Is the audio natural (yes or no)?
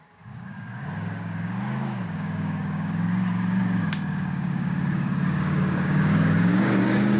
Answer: no